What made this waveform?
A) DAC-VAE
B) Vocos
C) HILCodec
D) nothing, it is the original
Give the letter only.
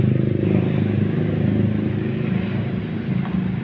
D